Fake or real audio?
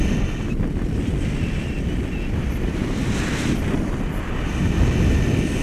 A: real